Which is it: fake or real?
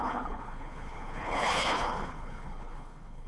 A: fake